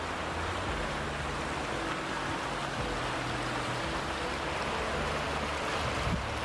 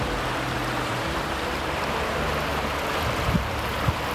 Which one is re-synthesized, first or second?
second